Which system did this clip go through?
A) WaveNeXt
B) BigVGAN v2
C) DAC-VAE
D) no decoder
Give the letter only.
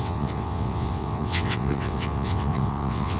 A